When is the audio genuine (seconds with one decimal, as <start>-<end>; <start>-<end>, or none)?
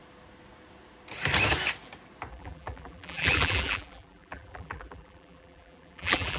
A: 0.0-2.3